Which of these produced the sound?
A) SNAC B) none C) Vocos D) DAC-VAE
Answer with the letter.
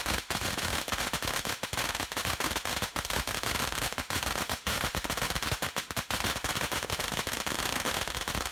D